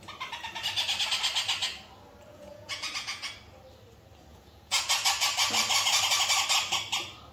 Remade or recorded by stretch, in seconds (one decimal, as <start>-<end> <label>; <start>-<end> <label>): 0.0-2.3 recorded; 2.3-3.3 remade; 3.3-4.3 recorded; 4.3-4.8 remade; 4.8-7.3 recorded